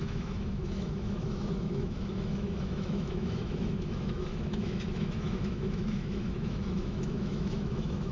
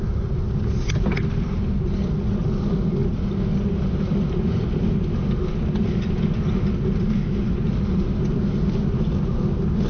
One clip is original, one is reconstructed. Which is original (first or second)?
second